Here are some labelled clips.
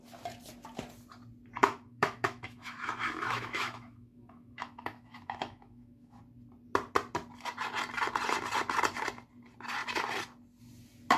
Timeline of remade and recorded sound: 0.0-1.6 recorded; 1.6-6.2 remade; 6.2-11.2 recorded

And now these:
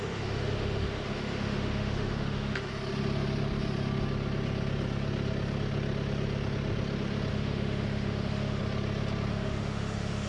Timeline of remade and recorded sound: 0.0-2.7 remade; 2.7-7.3 recorded; 7.3-8.6 remade; 8.6-9.3 recorded; 9.3-10.3 remade

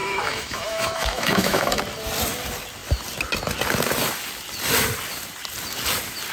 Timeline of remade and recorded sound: 0.0-1.8 remade; 1.8-6.3 recorded